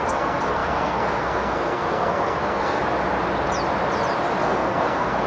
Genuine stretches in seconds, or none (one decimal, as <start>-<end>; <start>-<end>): 2.8-4.4